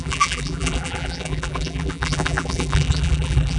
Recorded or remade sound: remade